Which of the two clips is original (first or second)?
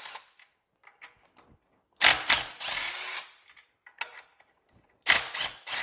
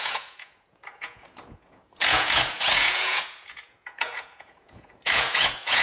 first